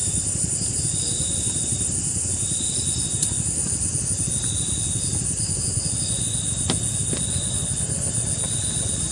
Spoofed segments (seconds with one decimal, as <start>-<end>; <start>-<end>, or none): 0.0-0.8